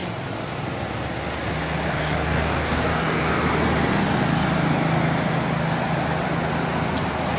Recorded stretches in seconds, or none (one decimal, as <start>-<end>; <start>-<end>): 0.0-1.9; 3.3-7.4